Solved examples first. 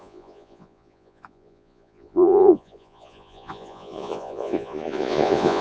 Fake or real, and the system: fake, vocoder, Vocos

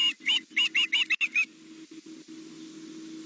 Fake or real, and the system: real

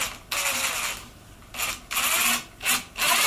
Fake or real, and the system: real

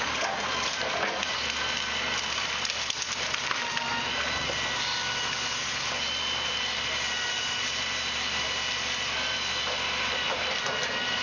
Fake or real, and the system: real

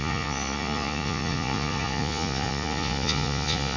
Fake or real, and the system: fake, vocoder, Vocos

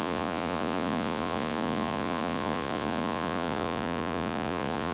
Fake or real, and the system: fake, vocoder, Vocos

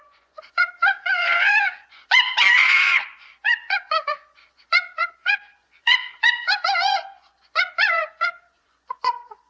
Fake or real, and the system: fake, vocoder, Vocos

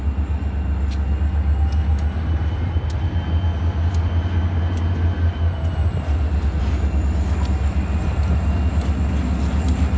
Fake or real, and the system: real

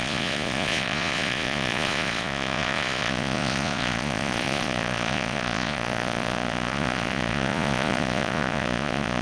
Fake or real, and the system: fake, vocoder, Vocos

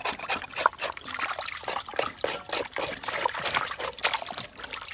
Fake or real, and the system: real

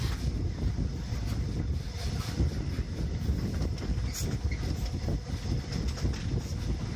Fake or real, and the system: real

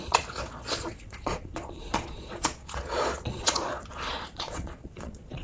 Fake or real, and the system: fake, vocoder, Vocos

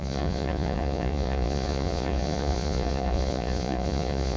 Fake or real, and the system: fake, vocoder, Vocos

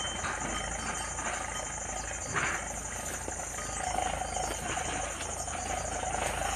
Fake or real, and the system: real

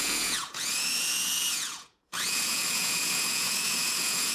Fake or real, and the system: fake, vocoder, Vocos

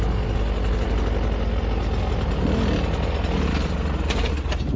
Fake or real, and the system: real